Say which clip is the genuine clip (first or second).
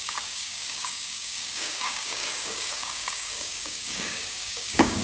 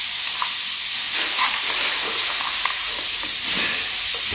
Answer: second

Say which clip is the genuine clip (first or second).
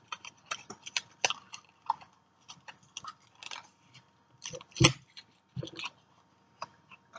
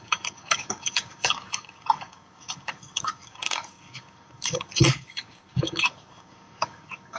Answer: first